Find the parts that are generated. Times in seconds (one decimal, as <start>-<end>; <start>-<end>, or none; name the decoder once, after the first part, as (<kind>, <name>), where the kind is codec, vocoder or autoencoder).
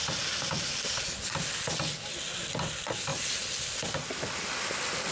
none